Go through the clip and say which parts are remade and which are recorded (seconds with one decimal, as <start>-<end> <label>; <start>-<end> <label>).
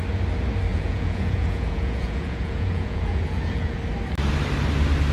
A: 0.0-0.7 recorded; 0.7-3.8 remade; 3.8-5.1 recorded